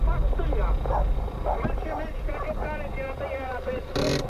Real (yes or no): yes